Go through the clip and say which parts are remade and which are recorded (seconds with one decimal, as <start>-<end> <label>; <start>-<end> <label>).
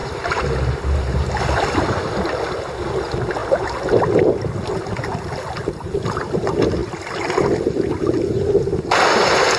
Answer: 0.0-1.4 remade; 1.4-8.7 recorded; 8.7-9.6 remade